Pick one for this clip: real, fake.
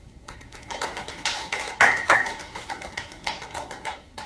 fake